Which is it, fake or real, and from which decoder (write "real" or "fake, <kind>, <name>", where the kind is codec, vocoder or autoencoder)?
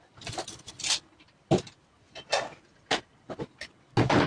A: real